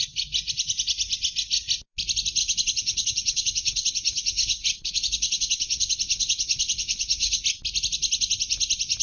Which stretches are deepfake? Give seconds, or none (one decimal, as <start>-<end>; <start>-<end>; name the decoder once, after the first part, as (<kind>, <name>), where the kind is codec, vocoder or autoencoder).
2.4-7.4 (codec, HILCodec)